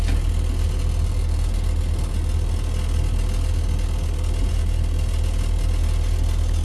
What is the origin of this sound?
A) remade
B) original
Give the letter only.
B